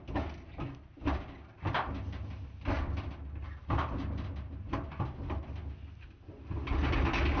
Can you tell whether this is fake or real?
real